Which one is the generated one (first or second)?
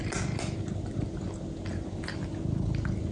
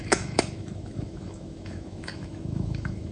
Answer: second